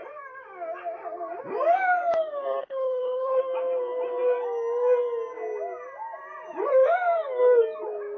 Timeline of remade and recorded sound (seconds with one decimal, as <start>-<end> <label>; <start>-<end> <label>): 0.0-2.6 recorded; 2.6-3.4 remade; 3.4-8.2 recorded